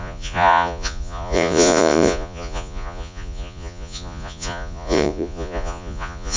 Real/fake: fake